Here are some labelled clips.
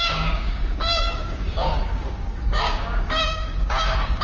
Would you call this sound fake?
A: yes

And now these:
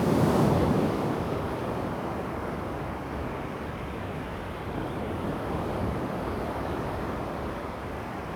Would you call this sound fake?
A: yes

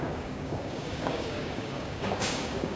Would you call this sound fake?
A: yes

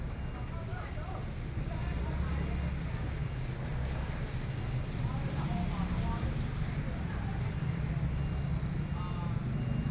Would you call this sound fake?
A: no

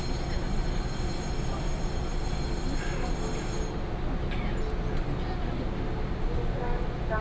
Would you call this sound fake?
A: no